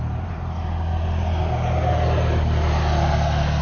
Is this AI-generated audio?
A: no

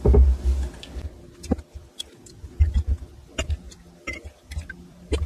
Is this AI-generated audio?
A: no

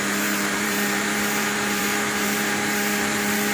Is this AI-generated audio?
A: yes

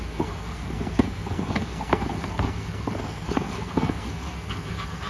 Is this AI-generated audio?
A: yes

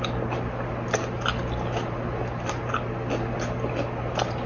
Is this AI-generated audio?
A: no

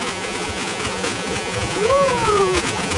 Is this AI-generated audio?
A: yes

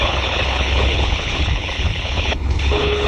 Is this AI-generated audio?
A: yes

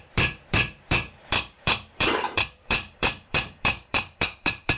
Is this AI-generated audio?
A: yes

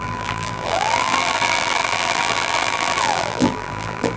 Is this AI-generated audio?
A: yes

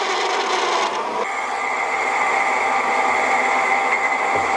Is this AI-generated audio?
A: no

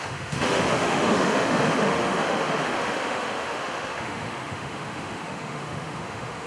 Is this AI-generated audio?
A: yes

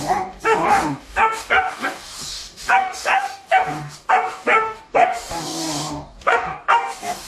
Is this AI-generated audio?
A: yes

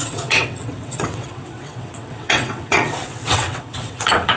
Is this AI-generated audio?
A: yes